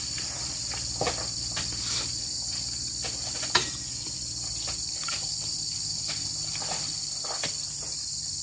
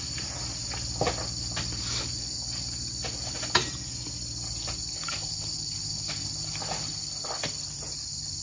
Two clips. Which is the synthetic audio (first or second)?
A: first